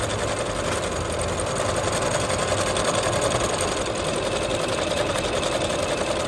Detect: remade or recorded recorded